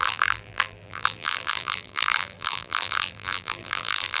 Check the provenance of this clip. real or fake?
fake